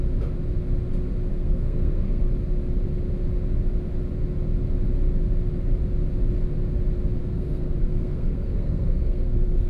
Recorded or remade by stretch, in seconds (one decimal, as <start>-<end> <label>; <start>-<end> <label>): 0.0-1.3 recorded; 1.3-2.2 remade; 2.2-7.2 recorded; 7.2-9.7 remade